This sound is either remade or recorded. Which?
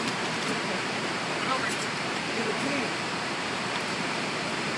remade